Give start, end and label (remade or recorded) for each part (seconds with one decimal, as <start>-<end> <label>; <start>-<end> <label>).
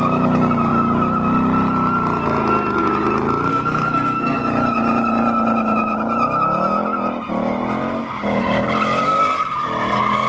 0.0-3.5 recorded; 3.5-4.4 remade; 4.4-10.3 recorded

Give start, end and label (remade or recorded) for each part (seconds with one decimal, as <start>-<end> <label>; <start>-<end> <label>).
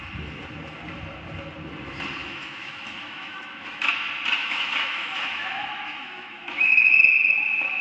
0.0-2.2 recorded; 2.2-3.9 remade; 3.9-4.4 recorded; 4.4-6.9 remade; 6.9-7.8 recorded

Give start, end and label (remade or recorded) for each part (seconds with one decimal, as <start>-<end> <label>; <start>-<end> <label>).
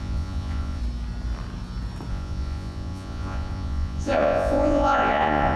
0.0-0.8 remade; 0.8-2.1 recorded; 2.1-5.6 remade